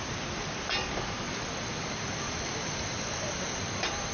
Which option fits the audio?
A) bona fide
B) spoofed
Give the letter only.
B